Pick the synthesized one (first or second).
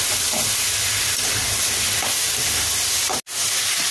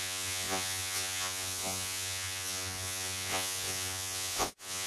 second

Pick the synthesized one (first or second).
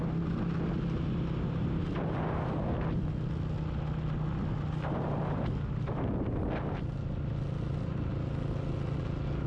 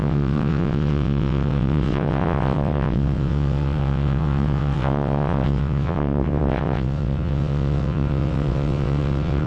second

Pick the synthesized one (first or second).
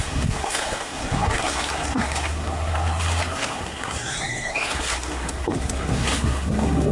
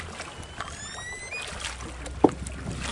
first